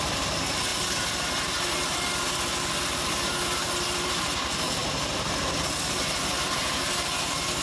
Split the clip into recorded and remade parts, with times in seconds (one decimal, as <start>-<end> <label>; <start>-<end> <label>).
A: 0.0-7.6 recorded